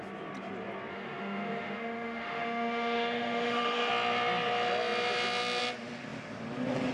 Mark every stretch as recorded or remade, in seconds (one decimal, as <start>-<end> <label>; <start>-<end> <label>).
0.0-0.9 recorded; 0.9-3.9 remade; 3.9-6.9 recorded